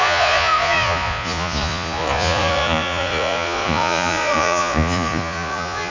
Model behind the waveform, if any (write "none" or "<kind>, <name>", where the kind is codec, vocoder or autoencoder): vocoder, Vocos